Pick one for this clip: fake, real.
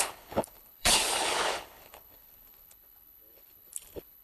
fake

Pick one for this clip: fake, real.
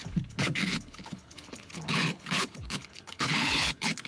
fake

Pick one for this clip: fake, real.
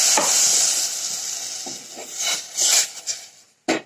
real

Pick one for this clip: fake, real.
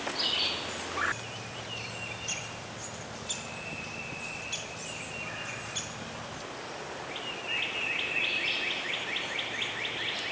real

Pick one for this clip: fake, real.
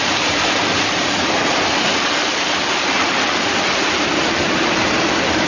fake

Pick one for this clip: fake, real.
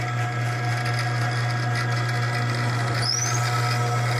real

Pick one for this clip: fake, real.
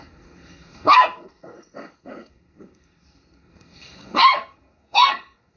fake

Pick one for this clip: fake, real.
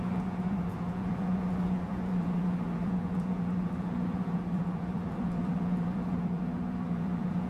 fake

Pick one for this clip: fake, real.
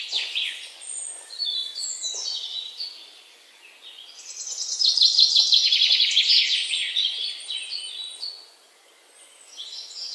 fake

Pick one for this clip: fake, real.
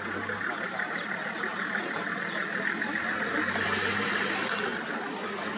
real